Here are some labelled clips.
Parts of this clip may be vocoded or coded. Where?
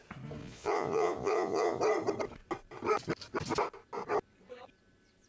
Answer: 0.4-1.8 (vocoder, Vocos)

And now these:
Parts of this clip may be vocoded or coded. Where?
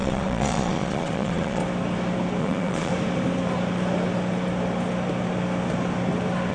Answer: 0.0-1.6 (vocoder, Vocos); 2.4-2.9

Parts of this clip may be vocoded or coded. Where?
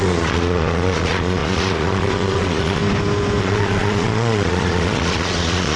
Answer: 0.0-2.8 (vocoder, Vocos); 3.4-5.8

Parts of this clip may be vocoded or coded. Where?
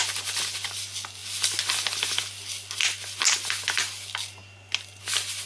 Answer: none